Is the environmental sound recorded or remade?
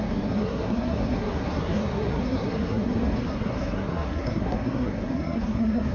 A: remade